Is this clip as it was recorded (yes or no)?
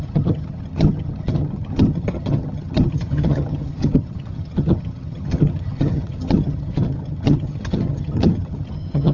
no